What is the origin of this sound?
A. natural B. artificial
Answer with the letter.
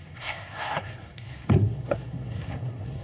B